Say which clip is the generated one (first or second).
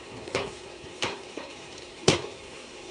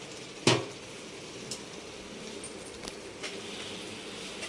first